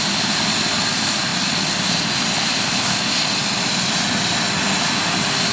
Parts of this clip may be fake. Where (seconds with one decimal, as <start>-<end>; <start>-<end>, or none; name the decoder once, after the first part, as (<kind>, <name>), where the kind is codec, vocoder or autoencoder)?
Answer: none